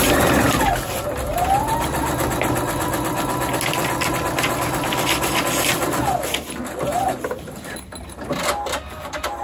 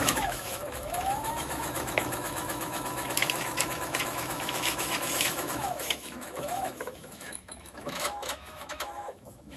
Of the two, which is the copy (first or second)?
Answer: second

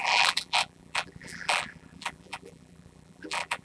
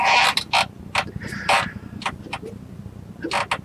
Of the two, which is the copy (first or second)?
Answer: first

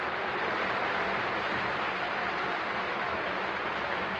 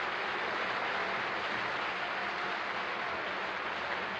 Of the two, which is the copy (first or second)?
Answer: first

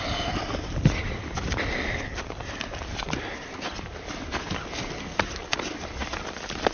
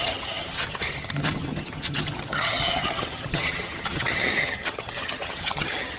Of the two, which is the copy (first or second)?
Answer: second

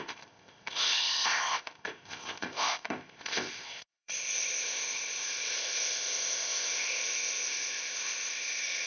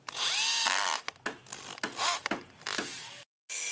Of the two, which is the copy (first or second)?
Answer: first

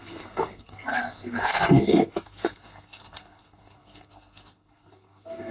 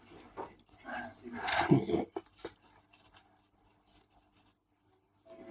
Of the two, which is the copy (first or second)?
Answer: first